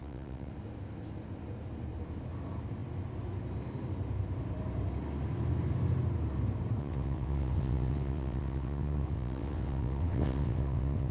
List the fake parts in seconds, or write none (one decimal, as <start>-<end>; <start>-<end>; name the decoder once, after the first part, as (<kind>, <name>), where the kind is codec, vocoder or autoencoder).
0.0-0.5 (vocoder, WaveNeXt); 6.8-11.1